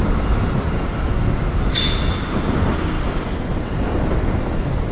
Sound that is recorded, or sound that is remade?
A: recorded